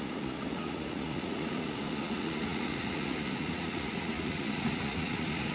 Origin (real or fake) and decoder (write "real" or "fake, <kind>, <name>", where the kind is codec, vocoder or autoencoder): fake, vocoder, Vocos